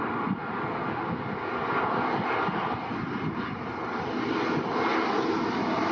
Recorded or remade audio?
recorded